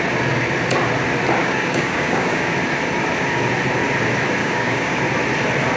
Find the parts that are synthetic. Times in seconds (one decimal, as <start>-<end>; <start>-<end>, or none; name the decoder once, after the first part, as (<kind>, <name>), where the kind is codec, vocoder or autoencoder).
1.4-2.5 (codec, DAC); 4.4-5.0